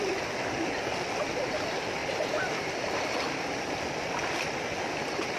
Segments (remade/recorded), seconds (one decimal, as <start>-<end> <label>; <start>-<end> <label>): 0.0-2.0 recorded; 2.0-3.0 remade; 3.0-5.4 recorded